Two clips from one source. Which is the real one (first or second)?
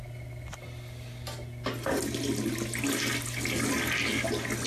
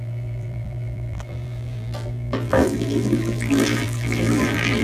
first